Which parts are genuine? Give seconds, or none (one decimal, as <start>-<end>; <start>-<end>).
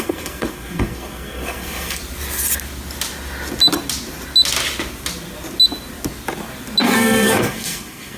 2.0-6.8